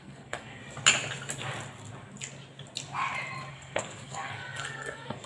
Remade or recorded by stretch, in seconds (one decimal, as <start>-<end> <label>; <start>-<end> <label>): 0.0-0.6 remade; 0.6-3.5 recorded; 3.5-5.3 remade